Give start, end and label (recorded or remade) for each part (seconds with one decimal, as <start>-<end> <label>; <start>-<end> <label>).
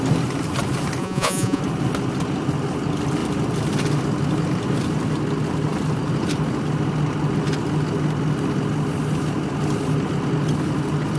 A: 0.0-1.0 recorded; 1.0-1.6 remade; 1.6-11.2 recorded